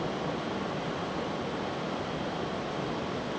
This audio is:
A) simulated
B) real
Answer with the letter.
B